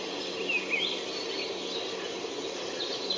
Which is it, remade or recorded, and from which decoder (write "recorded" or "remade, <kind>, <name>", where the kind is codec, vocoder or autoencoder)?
recorded